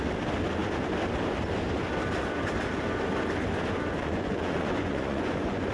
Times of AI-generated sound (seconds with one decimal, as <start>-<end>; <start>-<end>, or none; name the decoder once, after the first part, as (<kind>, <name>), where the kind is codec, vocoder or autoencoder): 4.0-5.7 (vocoder, Vocos)